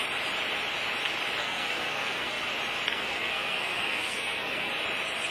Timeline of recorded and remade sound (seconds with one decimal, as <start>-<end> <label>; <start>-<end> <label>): 0.0-1.4 recorded; 1.4-2.5 remade; 2.5-2.9 recorded; 2.9-4.7 remade; 4.7-5.3 recorded